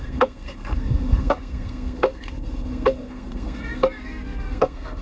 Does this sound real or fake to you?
fake